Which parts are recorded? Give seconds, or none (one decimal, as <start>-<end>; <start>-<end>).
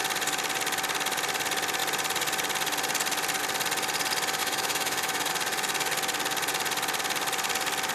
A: 0.0-4.4; 5.3-7.9